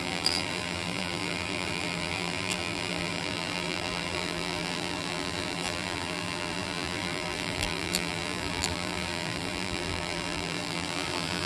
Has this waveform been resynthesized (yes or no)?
yes